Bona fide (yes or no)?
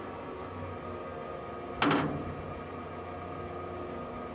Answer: yes